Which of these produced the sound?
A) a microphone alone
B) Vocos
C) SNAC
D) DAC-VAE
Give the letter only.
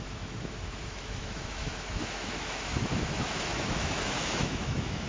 D